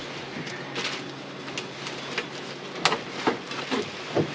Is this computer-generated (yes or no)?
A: no